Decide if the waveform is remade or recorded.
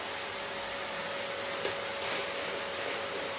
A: recorded